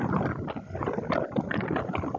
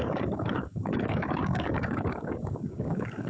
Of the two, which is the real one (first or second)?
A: first